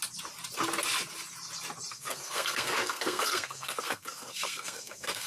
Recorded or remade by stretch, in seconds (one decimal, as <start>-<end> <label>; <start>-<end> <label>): 0.0-1.9 recorded; 1.9-5.3 remade